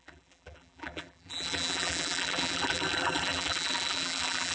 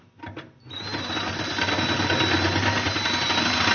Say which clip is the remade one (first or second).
first